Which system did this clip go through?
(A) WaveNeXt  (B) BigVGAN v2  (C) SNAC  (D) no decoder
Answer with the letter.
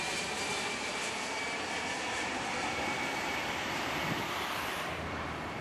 B